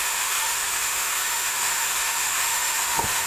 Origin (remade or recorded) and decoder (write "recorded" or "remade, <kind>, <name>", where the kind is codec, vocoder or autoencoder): remade, autoencoder, DAC-VAE